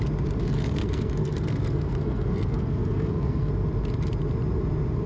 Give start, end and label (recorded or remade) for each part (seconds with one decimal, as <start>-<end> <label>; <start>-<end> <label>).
0.0-0.4 recorded; 0.4-3.5 remade; 3.5-5.1 recorded